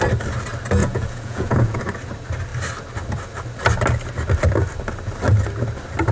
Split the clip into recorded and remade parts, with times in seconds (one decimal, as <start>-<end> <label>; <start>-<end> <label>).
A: 0.0-0.8 recorded; 0.8-1.8 remade; 1.8-6.1 recorded